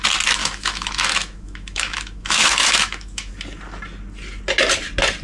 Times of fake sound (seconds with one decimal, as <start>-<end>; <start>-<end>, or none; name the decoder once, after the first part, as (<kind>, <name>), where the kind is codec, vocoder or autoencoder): 0.4-3.3 (autoencoder, DAC-VAE)